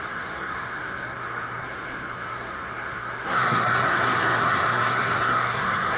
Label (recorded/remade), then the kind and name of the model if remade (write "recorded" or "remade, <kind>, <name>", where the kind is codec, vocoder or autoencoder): remade, codec, SNAC